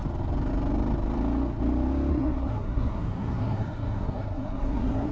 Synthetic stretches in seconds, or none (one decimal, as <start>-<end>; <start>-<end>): 2.1-5.1